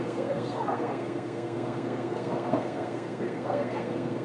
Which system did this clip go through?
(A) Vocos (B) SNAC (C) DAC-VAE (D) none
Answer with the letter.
B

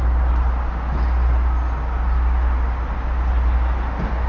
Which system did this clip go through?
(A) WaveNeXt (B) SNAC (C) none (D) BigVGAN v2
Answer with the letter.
C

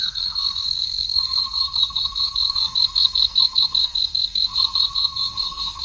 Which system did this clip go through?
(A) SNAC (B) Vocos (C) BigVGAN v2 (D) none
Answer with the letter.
A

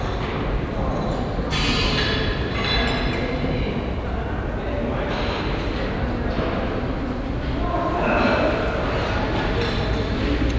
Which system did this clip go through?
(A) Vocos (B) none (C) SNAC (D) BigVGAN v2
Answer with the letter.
B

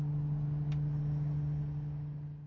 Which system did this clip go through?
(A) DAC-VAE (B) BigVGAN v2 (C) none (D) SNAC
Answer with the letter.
C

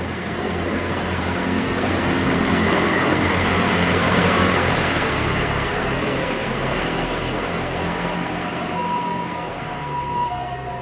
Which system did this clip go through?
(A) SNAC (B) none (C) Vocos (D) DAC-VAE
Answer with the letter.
A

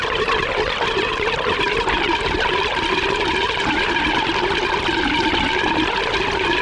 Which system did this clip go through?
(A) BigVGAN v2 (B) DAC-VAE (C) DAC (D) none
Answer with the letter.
D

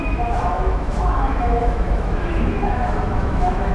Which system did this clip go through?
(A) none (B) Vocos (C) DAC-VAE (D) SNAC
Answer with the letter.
C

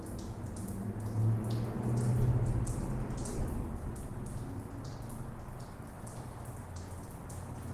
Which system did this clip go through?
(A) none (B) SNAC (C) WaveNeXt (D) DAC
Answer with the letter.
A